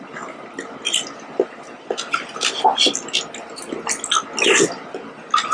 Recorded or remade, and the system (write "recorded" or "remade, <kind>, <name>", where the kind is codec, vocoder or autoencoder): recorded